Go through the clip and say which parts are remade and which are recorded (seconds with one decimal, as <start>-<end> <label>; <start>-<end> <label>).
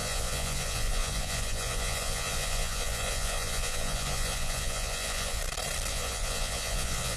0.0-5.4 remade; 5.4-5.9 recorded; 5.9-7.2 remade